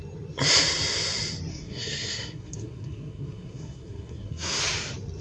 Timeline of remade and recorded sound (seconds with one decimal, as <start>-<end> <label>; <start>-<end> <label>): 0.0-1.5 recorded; 1.5-4.6 remade; 4.6-5.2 recorded